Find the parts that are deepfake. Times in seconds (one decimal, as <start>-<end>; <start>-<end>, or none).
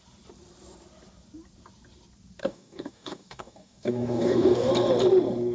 2.4-4.7